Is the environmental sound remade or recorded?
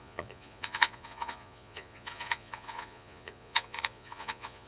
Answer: remade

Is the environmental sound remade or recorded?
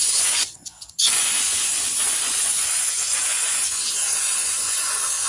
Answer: remade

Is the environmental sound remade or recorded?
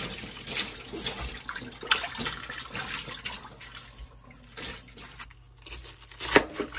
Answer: recorded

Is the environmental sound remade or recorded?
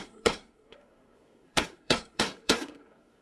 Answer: remade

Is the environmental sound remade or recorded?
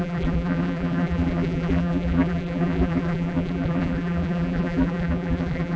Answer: remade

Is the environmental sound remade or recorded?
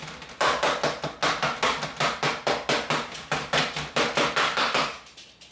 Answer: recorded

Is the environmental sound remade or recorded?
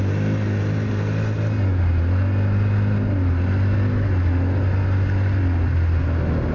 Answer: recorded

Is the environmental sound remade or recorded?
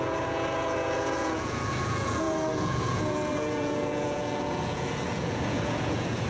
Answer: remade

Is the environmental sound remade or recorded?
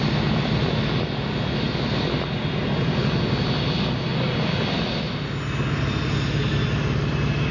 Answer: recorded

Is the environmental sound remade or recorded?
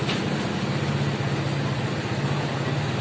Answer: recorded